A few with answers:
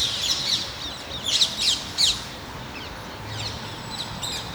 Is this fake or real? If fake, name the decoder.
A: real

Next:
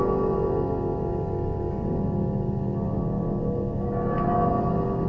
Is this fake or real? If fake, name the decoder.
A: real